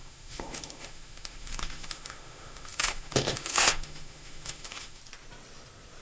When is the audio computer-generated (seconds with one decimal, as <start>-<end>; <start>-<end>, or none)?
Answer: 0.0-5.0